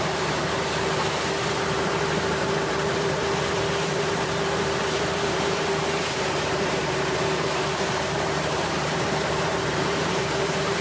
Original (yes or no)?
no